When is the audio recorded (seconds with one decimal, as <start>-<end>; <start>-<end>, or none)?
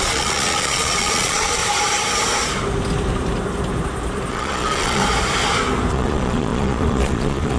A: 1.6-4.3; 5.0-5.9